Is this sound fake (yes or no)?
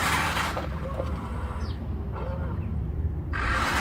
no